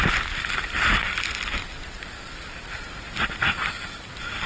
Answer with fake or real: real